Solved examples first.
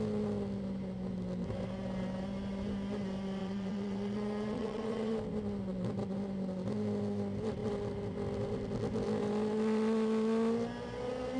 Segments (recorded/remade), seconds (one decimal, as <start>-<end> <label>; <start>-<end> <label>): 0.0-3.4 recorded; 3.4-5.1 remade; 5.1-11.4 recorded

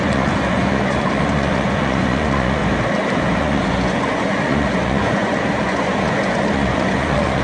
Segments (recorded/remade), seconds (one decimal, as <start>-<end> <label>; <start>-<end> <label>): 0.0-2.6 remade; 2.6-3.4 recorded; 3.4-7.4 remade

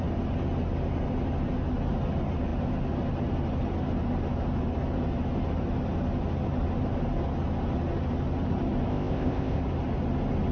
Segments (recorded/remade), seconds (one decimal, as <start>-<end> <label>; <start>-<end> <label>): 0.0-8.9 recorded; 8.9-9.6 remade; 9.6-10.5 recorded